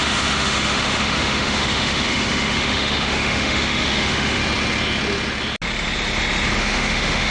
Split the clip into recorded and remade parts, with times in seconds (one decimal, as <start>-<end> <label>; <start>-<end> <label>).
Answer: 0.0-4.4 remade; 4.4-6.6 recorded; 6.6-7.3 remade